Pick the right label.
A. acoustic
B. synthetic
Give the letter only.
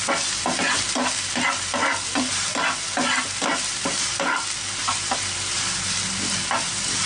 A